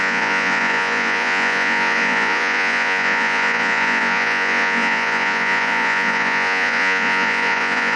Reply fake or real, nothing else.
fake